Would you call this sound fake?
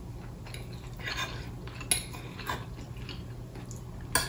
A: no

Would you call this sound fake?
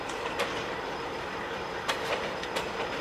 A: yes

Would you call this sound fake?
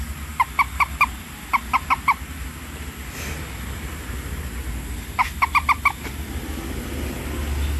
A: no